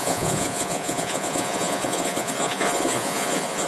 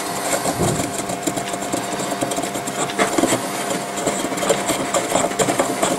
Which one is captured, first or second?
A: second